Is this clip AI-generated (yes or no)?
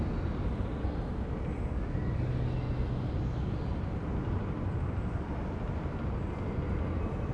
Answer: no